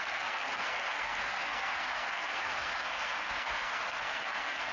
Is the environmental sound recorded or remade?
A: remade